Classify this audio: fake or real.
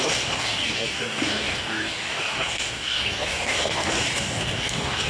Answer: fake